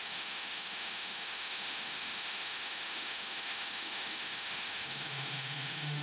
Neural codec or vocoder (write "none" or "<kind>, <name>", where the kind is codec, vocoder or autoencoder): autoencoder, DAC-VAE